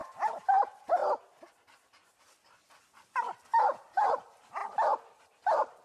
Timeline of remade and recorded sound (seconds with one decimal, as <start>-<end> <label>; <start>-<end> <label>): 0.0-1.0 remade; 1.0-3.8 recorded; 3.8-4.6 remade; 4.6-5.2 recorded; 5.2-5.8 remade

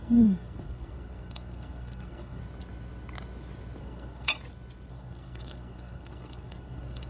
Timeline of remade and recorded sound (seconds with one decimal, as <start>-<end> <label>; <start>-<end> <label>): 0.0-2.4 remade; 2.4-3.8 recorded; 3.8-4.3 remade; 4.3-4.9 recorded; 4.9-7.1 remade

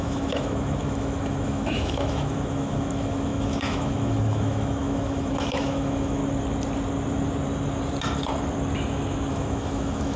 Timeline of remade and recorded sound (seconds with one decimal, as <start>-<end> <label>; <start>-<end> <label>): 0.0-6.2 remade; 6.2-9.3 recorded; 9.3-10.2 remade